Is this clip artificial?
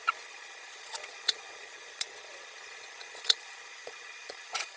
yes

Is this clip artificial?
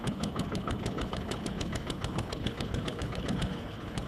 yes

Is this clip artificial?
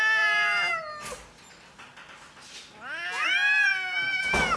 no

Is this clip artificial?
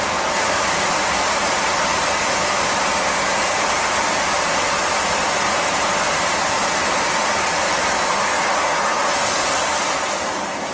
no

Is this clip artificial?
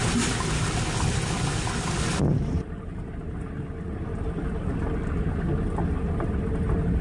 no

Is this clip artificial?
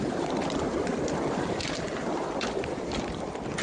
no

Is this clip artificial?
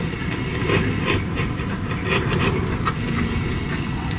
no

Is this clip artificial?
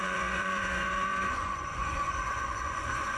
yes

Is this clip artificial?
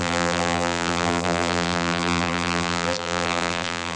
yes